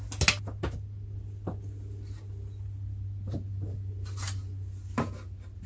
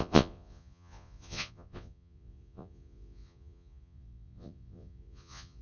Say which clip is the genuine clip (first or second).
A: first